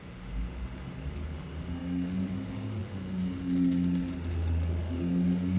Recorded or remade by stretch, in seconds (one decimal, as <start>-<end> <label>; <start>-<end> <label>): 0.0-5.6 remade

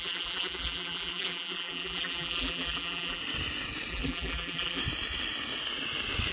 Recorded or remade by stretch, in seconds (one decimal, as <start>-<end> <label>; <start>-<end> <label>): 0.0-3.2 remade; 3.2-3.9 recorded; 3.9-4.8 remade; 4.8-6.3 recorded

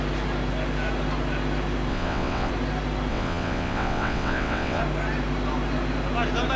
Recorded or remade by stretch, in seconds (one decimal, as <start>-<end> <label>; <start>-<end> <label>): 0.0-1.9 recorded; 1.9-2.5 remade; 2.5-3.1 recorded; 3.1-4.8 remade; 4.8-6.6 recorded

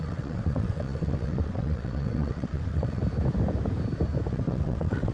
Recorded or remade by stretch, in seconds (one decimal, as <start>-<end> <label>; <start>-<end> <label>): 0.0-3.0 remade; 3.0-4.3 recorded; 4.3-5.1 remade

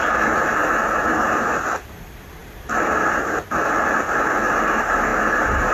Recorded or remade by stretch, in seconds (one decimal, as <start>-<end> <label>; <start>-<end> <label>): 0.0-0.6 recorded; 0.6-1.4 remade; 1.4-2.4 recorded; 2.4-4.2 remade; 4.2-5.7 recorded